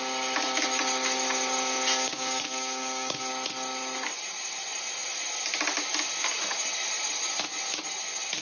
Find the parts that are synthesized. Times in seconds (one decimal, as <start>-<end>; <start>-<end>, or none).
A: 1.9-3.3